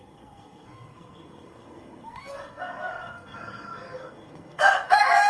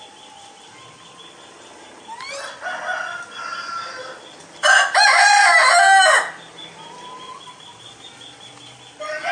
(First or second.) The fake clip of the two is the first